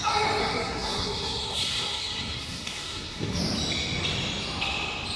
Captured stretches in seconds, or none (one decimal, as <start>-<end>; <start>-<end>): 0.0-0.4; 3.4-5.2